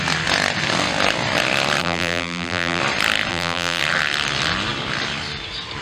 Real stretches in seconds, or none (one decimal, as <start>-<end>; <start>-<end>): 0.0-1.8; 2.8-3.3; 3.8-5.8